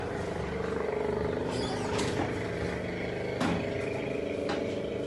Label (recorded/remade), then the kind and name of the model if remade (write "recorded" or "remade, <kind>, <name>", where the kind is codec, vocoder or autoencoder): recorded